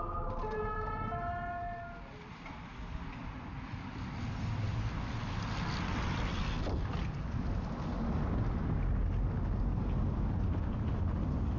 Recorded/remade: recorded